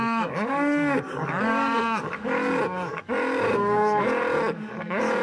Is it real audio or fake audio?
fake